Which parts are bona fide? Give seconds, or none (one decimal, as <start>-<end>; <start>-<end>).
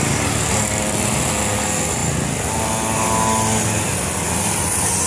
0.0-5.1